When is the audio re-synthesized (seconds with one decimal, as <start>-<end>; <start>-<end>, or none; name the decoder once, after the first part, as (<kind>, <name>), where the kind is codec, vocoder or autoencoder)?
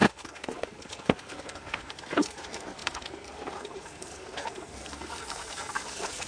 0.0-6.3 (codec, SNAC)